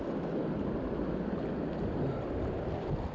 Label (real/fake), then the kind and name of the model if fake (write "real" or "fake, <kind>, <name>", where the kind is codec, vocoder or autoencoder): real